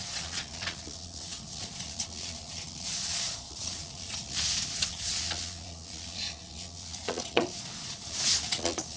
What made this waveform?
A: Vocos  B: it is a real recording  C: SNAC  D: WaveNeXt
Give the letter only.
A